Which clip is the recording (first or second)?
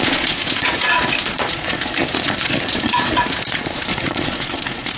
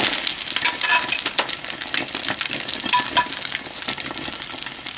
second